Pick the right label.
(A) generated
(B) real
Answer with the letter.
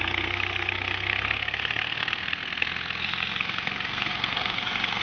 A